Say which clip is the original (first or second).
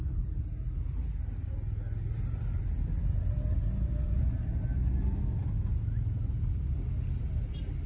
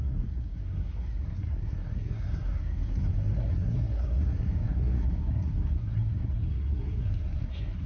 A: first